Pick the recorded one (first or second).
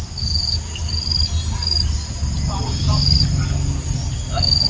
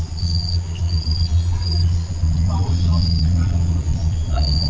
first